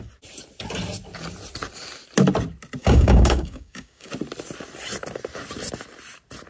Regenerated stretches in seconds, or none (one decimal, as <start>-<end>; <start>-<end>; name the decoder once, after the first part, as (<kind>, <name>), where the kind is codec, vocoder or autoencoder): 2.8-4.1 (codec, DAC)